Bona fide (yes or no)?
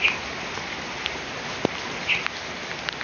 yes